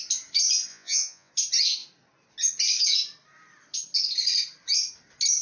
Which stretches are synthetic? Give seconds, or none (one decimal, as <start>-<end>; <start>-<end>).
0.7-1.3